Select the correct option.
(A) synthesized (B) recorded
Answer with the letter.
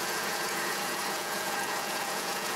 A